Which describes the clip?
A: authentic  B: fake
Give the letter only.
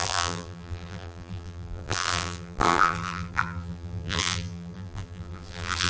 B